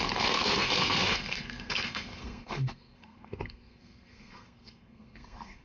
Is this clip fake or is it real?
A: fake